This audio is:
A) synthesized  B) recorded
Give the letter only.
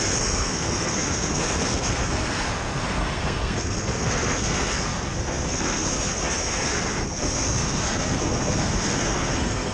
A